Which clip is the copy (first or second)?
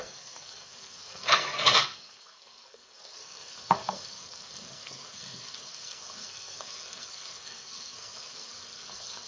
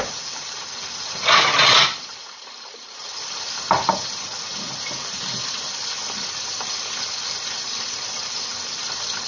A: first